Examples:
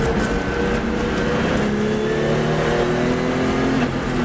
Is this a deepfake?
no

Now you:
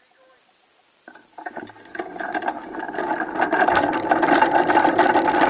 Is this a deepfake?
no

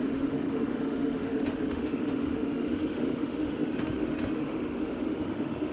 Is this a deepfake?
yes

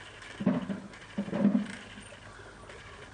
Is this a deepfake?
no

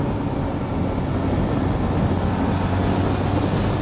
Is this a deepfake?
no